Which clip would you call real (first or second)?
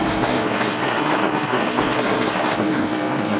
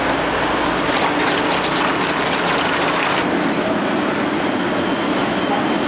second